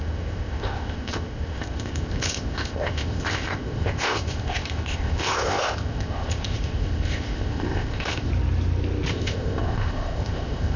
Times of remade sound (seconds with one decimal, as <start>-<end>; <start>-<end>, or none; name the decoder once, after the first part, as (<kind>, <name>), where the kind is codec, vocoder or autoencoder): 0.0-8.3 (codec, ZipCodec); 9.1-10.8